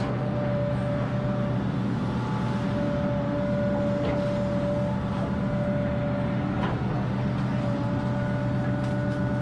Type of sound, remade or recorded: recorded